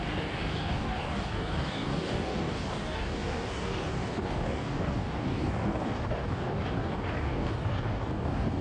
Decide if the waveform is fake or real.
fake